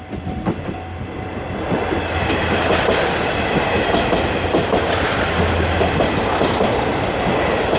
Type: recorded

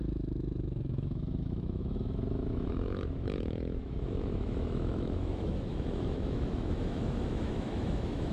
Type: remade